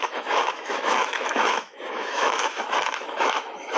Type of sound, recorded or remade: remade